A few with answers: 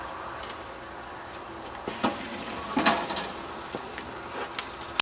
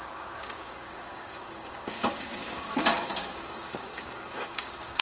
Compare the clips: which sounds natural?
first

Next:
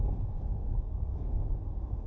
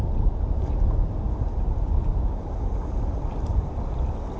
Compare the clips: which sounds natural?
second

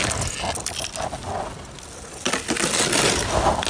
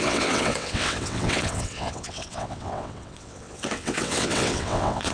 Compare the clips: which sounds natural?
first